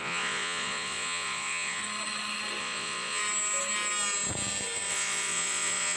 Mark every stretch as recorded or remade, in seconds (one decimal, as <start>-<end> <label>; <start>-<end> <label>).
0.0-1.8 remade; 1.8-2.6 recorded; 2.6-3.2 remade; 3.2-4.9 recorded; 4.9-6.0 remade